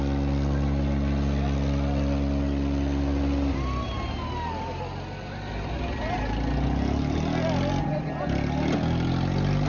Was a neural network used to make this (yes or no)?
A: no